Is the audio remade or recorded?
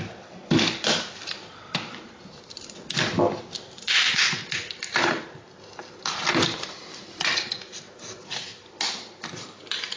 recorded